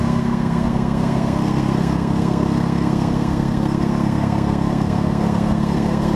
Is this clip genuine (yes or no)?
no